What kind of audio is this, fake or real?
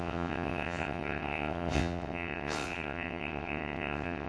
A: fake